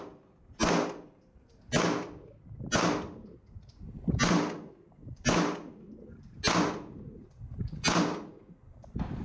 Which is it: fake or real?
real